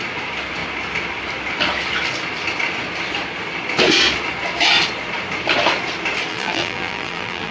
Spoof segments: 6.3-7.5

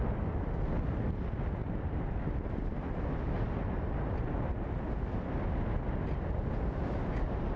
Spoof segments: none

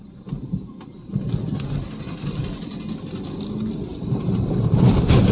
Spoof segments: 3.9-5.3